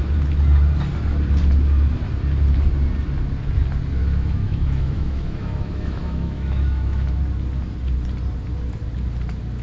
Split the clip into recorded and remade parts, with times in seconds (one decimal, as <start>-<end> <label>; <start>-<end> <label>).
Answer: 0.0-4.0 recorded; 4.0-7.2 remade; 7.2-9.6 recorded